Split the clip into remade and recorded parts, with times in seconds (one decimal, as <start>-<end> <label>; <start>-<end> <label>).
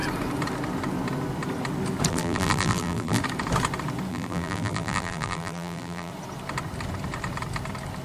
0.0-2.1 recorded; 2.1-3.2 remade; 3.2-4.1 recorded; 4.1-6.1 remade; 6.1-8.0 recorded